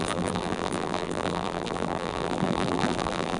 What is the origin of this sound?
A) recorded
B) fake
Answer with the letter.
B